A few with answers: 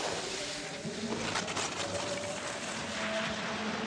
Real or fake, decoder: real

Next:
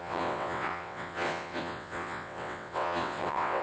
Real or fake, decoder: fake, vocoder, WaveNeXt